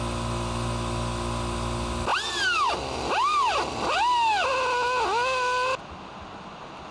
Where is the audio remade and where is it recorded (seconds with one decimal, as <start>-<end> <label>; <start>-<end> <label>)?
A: 0.0-6.9 recorded